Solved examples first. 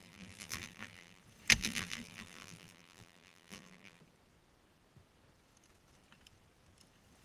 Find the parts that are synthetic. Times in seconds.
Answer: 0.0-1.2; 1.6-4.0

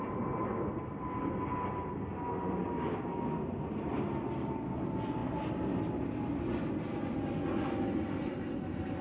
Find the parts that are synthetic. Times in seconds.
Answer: 2.6-3.3

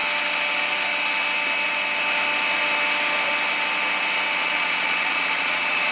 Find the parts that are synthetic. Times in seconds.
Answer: 4.4-5.9